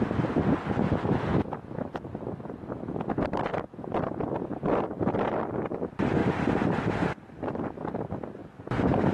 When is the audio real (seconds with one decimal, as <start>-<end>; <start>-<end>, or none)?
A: 0.0-6.2; 7.6-8.4